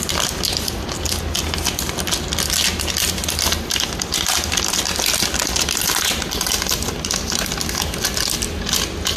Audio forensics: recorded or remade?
recorded